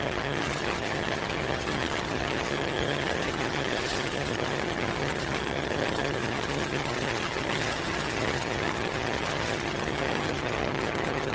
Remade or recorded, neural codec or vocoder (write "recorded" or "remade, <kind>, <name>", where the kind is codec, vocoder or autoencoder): remade, vocoder, HiFi-GAN